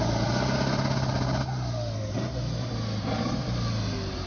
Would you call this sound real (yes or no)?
yes